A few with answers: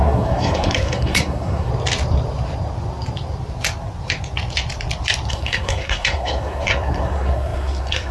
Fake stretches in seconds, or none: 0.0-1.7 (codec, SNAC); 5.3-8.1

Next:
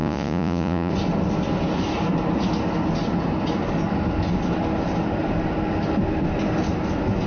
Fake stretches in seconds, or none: 0.0-0.9 (vocoder, Vocos)

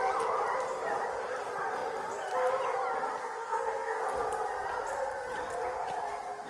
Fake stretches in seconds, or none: 3.2-4.0 (codec, SNAC)

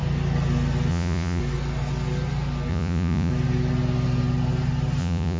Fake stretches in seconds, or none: 0.9-1.4 (vocoder, Vocos); 2.7-3.3; 5.0-5.4